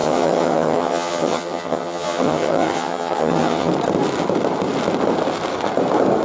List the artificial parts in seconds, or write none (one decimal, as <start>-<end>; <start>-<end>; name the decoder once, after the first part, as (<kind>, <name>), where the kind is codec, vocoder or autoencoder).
0.0-3.7 (vocoder, HiFi-GAN)